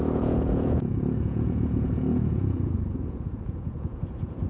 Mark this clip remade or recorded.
remade